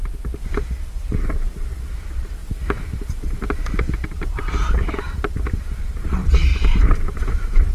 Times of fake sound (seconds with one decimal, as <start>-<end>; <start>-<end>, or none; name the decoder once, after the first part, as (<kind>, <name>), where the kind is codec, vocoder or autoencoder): 0.0-2.4 (vocoder, BigVGAN v2); 3.7-7.7

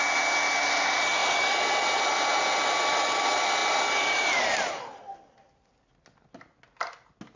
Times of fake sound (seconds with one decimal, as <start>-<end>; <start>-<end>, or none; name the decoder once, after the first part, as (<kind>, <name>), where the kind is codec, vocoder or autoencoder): none

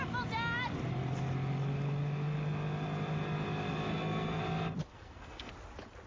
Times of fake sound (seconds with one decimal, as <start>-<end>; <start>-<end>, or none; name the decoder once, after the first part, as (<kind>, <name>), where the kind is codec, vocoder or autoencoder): 3.9-4.4 (codec, SNAC); 4.9-5.5

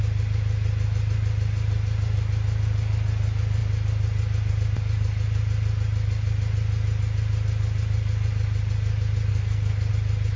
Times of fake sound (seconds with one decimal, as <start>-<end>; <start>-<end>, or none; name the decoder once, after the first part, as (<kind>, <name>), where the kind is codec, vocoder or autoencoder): 9.3-9.9 (codec, SNAC)

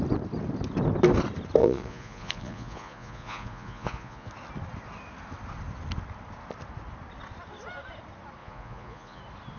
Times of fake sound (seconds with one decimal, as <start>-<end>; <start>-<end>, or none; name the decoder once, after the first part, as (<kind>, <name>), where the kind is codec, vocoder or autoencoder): 1.6-4.3 (vocoder, Vocos); 8.4-9.2

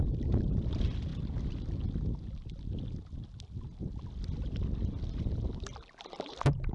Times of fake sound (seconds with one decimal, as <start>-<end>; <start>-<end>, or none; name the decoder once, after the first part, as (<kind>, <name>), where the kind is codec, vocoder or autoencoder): none